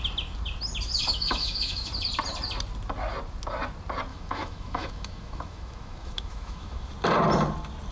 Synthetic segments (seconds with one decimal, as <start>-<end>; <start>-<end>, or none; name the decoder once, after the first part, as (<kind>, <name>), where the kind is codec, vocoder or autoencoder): 1.0-1.9 (autoencoder, DAC-VAE); 4.1-6.9